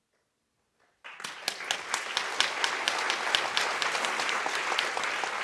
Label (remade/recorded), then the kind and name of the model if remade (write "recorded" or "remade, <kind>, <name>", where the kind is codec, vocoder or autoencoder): recorded